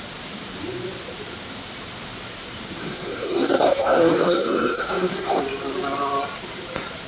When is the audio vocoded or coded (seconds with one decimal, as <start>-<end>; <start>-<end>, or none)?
2.8-5.4